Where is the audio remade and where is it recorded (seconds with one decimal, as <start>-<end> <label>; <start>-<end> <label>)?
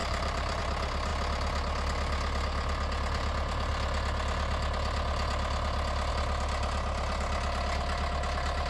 0.0-0.6 remade; 0.6-8.7 recorded